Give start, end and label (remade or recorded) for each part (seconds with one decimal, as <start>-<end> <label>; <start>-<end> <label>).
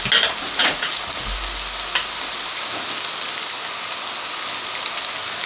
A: 0.0-0.6 recorded; 0.6-1.1 remade; 1.1-5.5 recorded